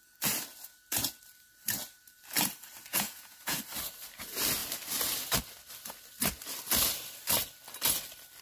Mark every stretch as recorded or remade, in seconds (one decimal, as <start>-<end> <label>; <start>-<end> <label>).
0.0-2.9 recorded; 2.9-3.6 remade; 3.6-8.4 recorded